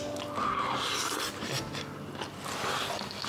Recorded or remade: recorded